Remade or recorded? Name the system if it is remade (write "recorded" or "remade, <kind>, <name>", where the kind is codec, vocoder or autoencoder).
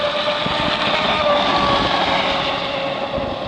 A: recorded